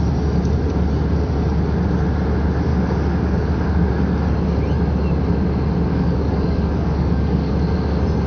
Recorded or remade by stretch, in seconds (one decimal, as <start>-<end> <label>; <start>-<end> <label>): 0.0-2.7 recorded; 2.7-3.9 remade; 3.9-5.9 recorded; 5.9-7.5 remade; 7.5-8.3 recorded

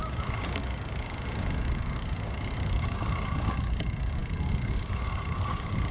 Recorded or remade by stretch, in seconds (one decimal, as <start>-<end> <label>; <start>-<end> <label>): 0.0-5.9 remade